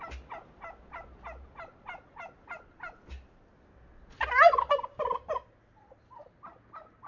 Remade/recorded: recorded